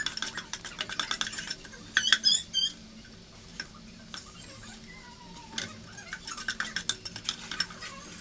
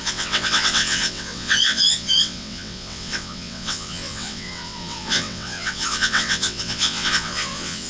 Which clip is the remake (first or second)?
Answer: second